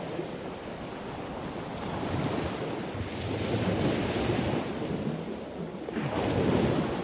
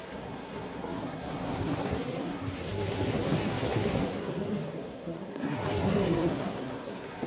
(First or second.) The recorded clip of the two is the first